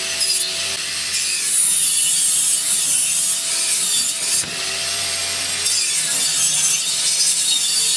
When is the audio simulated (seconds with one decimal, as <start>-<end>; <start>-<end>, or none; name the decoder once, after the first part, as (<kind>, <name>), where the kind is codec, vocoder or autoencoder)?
0.0-5.2 (vocoder, BigVGAN v2); 7.0-8.0